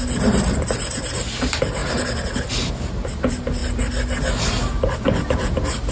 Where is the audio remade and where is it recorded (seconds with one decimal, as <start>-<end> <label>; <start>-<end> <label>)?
0.0-5.9 recorded